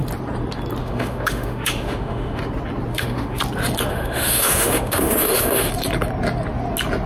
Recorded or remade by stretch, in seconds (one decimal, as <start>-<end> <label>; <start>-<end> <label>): 0.0-0.8 recorded; 0.8-2.4 remade; 2.4-2.9 recorded; 2.9-3.4 remade; 3.4-3.9 recorded; 3.9-5.7 remade; 5.7-7.1 recorded